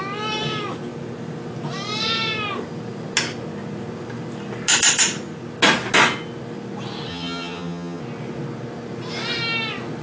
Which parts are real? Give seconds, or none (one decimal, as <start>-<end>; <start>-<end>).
0.0-7.1; 8.0-10.0